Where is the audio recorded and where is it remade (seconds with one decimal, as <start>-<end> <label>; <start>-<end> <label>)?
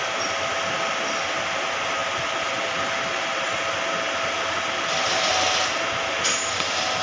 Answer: 0.0-7.0 recorded